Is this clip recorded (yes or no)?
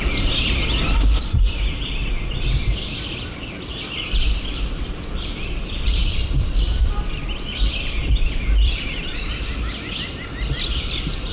no